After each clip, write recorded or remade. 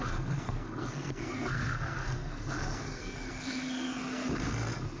remade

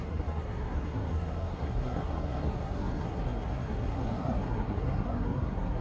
remade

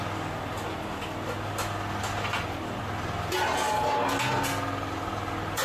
recorded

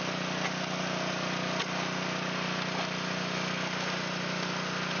recorded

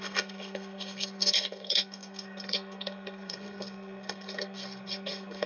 remade